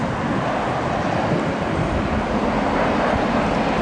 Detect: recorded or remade recorded